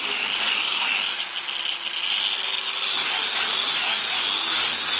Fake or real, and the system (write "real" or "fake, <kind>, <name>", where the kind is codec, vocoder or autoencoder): real